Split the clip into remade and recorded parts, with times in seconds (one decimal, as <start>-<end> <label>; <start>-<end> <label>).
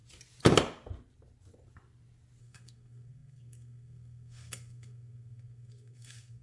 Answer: 0.0-2.4 recorded; 2.4-6.4 remade